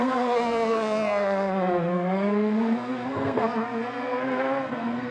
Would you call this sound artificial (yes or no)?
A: yes